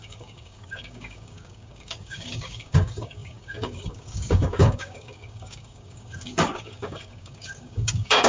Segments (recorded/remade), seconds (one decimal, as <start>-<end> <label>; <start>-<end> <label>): 0.0-8.3 remade